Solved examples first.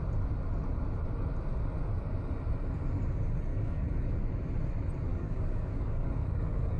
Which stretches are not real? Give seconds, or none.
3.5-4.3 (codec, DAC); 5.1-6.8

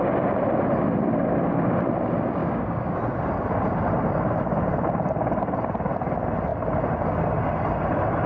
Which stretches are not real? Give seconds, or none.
2.4-3.0 (codec, DAC)

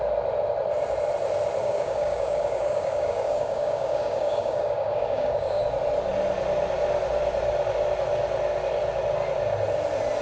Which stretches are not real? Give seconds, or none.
1.6-5.6 (codec, DAC)

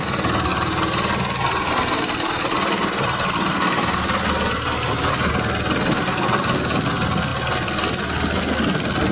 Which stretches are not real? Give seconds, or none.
none